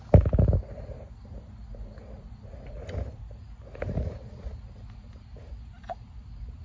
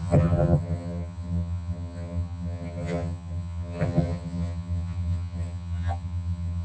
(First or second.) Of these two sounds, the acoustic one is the first